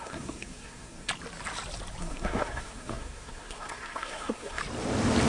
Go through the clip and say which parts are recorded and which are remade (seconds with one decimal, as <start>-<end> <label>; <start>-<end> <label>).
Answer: 0.0-1.1 remade; 1.1-2.0 recorded; 2.0-4.6 remade; 4.6-5.3 recorded